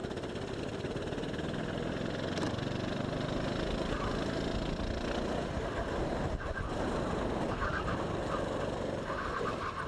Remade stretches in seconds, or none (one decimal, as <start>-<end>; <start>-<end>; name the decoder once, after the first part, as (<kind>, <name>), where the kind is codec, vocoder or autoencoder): none